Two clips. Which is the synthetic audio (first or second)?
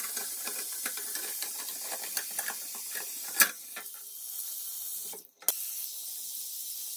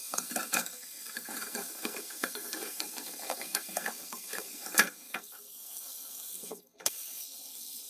second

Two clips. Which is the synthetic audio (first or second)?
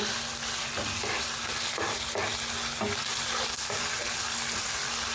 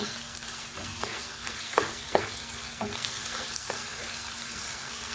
second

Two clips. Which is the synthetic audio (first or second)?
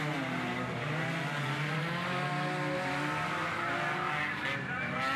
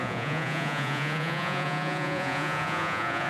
second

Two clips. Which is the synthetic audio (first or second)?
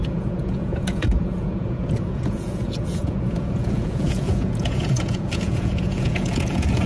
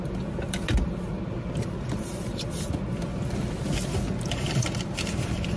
first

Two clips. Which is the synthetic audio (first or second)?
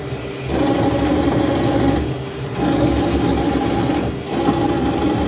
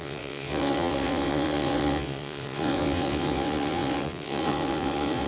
second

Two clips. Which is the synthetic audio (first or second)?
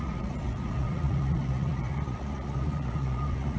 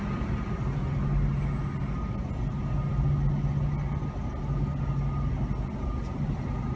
first